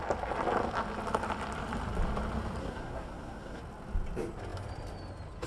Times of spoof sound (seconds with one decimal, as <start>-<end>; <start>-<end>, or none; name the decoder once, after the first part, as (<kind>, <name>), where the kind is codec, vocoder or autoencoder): 2.6-3.6 (codec, SNAC)